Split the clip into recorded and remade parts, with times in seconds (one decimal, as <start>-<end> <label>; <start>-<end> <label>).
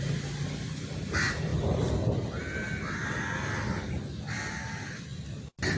0.0-5.8 recorded